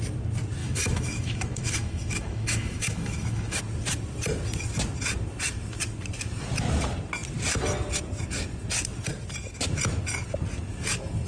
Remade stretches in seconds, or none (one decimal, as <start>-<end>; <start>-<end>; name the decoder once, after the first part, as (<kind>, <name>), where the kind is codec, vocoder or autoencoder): 0.6-3.6 (autoencoder, DAC-VAE)